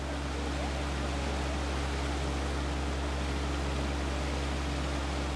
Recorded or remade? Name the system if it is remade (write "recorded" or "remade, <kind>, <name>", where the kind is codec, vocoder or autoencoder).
recorded